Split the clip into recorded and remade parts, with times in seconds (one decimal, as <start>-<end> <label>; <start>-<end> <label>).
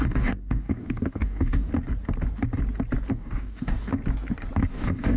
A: 0.0-1.7 remade; 1.7-3.1 recorded; 3.1-3.9 remade; 3.9-4.7 recorded; 4.7-5.2 remade